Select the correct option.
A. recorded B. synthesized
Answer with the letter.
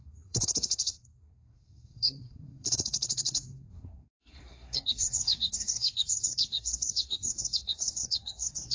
B